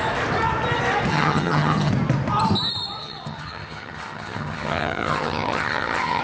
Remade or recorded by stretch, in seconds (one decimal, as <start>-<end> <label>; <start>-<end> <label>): 0.0-1.1 recorded; 1.1-1.9 remade; 1.9-3.0 recorded; 3.0-6.2 remade